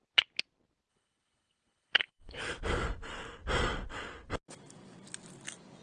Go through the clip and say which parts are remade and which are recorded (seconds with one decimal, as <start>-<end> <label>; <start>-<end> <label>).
0.0-0.9 recorded; 0.9-2.4 remade; 2.4-5.8 recorded